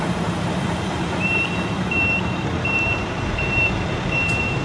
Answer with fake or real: fake